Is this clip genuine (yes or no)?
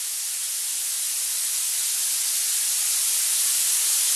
yes